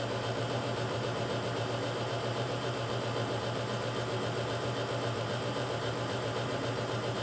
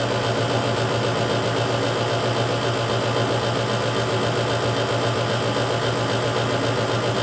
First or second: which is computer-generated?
first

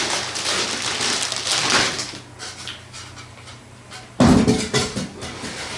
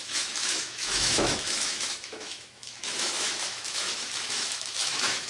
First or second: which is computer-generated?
second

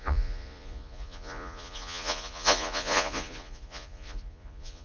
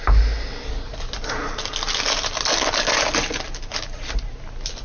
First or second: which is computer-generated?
first